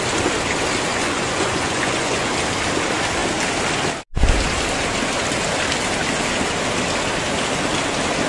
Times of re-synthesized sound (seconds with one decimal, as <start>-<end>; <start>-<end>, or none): 0.9-2.3